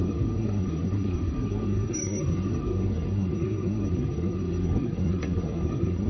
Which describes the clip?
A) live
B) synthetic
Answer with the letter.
B